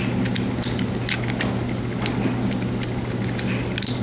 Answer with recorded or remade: recorded